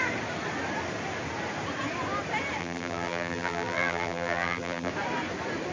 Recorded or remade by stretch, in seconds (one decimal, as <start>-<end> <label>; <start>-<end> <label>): 0.0-2.6 recorded; 2.6-4.9 remade; 4.9-5.7 recorded